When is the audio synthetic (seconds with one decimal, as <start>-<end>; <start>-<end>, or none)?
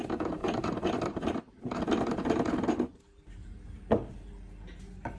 0.4-1.8; 3.4-4.1